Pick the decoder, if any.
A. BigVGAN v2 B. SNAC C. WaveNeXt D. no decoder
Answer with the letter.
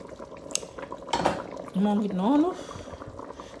D